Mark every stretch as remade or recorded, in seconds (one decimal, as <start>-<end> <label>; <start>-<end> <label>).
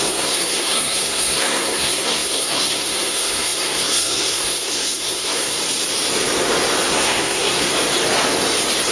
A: 0.0-5.6 remade; 5.6-6.9 recorded; 6.9-7.7 remade; 7.7-8.9 recorded